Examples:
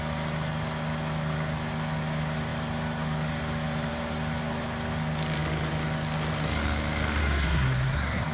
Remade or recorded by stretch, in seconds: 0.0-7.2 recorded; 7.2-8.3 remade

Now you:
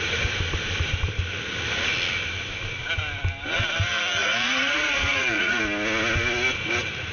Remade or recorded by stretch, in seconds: 0.0-4.2 recorded; 4.2-5.6 remade; 5.6-7.1 recorded

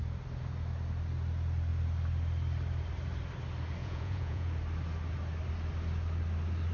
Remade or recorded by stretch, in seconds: 0.0-3.8 recorded; 3.8-4.5 remade; 4.5-6.7 recorded